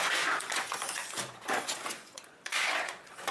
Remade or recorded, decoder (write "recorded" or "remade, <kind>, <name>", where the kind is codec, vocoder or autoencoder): remade, vocoder, Vocos